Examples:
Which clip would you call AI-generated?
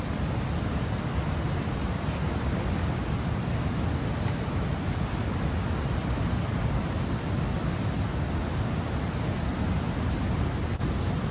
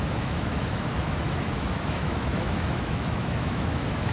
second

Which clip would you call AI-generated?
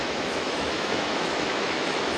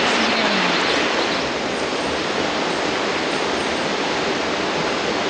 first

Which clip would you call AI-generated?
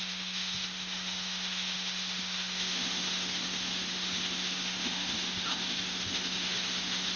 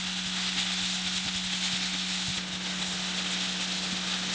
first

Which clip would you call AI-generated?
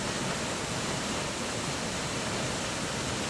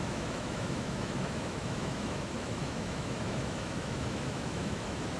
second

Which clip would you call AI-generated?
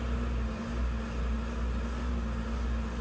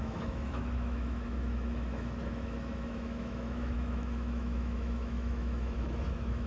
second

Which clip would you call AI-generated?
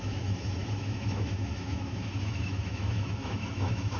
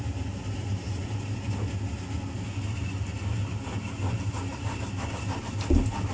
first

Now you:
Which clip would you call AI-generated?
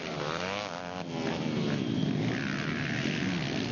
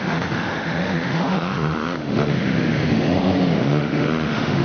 second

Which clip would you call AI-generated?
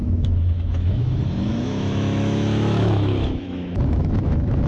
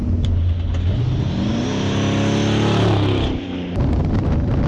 first